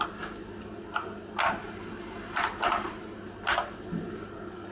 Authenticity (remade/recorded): recorded